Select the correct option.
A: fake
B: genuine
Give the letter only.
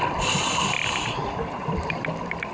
B